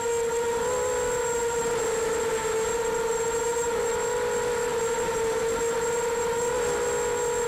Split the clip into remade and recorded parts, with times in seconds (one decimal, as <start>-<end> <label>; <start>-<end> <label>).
0.0-7.5 recorded